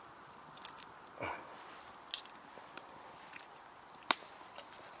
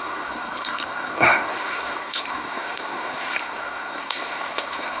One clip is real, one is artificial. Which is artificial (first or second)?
second